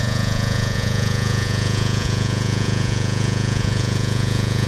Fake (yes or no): yes